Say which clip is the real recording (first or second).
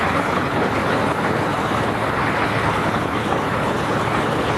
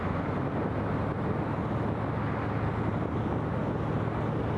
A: second